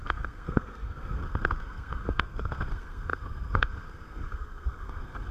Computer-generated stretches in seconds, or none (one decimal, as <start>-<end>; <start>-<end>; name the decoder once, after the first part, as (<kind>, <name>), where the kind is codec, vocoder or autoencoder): 0.0-5.3 (codec, SNAC)